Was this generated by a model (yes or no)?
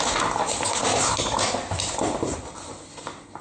no